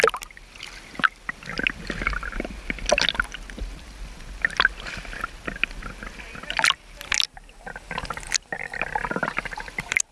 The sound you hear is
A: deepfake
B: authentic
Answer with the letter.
B